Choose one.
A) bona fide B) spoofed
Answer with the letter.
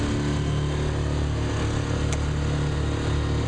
A